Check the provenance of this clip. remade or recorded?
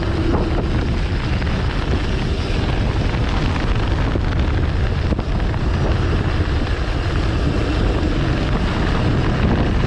recorded